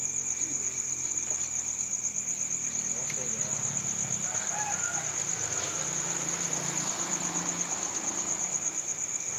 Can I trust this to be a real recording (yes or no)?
yes